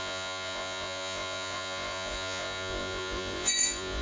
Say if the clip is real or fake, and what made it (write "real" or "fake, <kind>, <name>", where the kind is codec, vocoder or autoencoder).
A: fake, vocoder, Vocos